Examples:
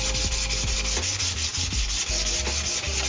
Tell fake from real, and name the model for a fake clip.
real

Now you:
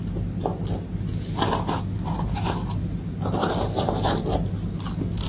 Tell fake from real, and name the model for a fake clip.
real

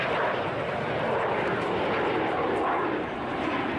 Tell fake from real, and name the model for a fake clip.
real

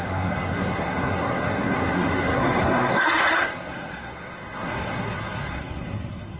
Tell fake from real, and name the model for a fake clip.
fake, codec, SNAC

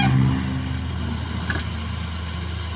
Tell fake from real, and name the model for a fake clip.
real